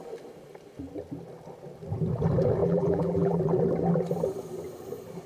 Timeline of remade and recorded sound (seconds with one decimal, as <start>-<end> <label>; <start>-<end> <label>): 0.0-2.6 recorded; 2.6-3.4 remade; 3.4-5.3 recorded